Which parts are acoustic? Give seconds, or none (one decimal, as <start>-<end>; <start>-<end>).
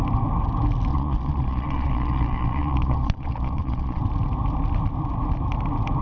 0.0-0.9; 4.0-6.0